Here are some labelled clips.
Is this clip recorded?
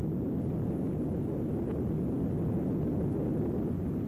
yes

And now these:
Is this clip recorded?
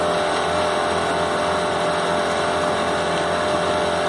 yes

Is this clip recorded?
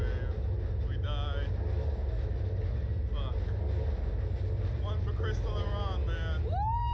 yes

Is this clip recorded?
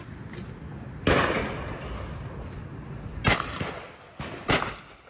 yes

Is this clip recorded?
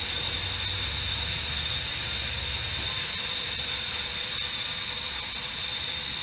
yes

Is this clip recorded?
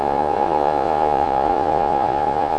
no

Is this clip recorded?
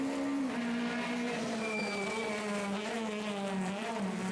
yes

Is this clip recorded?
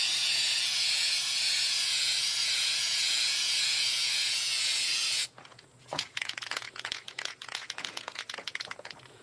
no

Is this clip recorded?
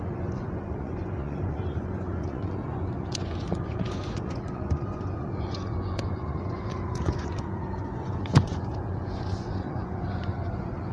no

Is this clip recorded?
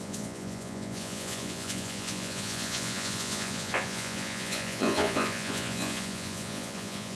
no